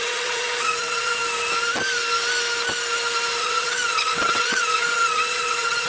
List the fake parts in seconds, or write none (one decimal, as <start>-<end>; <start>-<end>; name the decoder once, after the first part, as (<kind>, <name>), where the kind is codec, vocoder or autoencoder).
0.0-1.2 (vocoder, WaveNeXt); 3.4-5.9